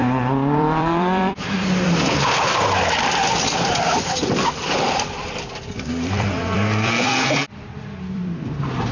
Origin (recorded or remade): remade